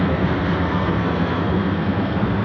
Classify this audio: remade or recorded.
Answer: remade